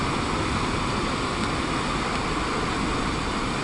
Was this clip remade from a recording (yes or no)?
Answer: no